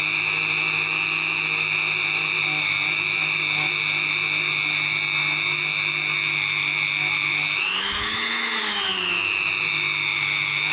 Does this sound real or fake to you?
fake